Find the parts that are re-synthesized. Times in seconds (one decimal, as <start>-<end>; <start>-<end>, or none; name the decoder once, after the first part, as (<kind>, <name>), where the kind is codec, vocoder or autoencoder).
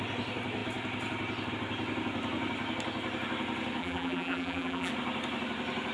3.8-4.9 (vocoder, BigVGAN v2)